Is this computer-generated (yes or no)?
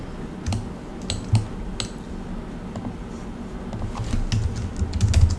no